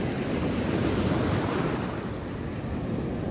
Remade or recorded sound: recorded